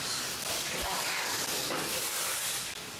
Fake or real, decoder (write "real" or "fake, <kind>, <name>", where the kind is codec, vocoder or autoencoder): fake, codec, DAC